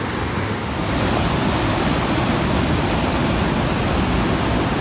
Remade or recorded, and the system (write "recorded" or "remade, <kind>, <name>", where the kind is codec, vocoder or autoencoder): recorded